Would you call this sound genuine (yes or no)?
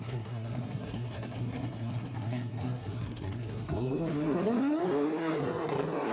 no